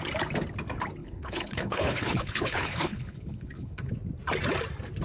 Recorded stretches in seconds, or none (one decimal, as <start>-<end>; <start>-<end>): 0.0-1.0; 3.9-5.0